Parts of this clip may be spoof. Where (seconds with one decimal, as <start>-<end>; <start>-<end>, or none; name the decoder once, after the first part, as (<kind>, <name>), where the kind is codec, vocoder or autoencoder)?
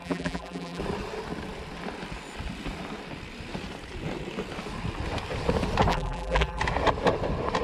0.0-0.8 (vocoder, BigVGAN v2); 5.9-6.6